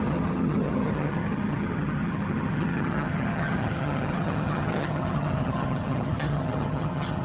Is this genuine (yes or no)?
no